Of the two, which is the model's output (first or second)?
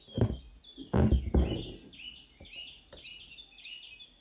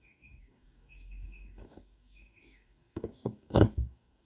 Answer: second